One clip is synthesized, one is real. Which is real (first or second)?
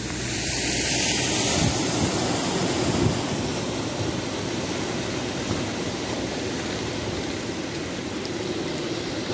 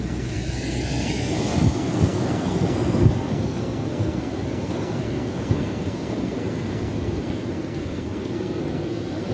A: first